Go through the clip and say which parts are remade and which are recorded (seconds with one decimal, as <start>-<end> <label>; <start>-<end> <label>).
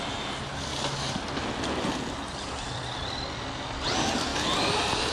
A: 0.0-5.1 recorded